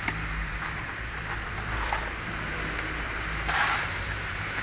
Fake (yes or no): yes